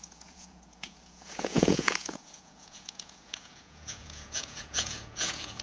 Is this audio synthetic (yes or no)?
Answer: yes